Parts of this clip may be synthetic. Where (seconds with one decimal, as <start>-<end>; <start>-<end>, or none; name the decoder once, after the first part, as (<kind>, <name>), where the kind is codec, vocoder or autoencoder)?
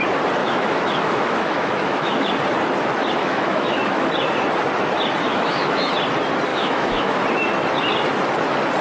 0.4-2.3 (autoencoder, DAC-VAE); 3.2-4.1; 5.3-5.9; 6.5-7.2